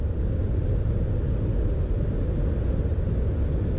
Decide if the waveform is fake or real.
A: real